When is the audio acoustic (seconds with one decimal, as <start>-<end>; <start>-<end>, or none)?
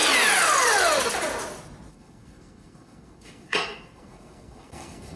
0.0-1.9